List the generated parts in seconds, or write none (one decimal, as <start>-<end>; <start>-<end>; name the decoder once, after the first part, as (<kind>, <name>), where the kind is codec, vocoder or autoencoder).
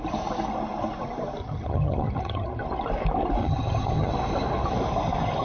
1.4-2.6 (vocoder, HiFi-GAN); 3.4-4.1